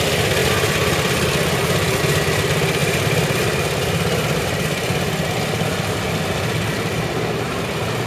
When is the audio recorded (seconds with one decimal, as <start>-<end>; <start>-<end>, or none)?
0.0-8.1